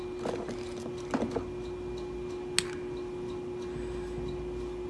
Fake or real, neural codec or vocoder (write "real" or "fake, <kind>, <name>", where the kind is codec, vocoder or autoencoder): real